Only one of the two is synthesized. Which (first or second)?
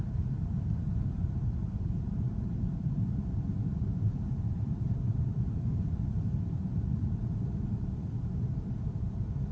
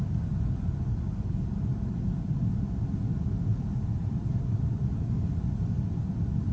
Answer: first